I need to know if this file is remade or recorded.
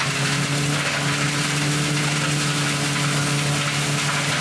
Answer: recorded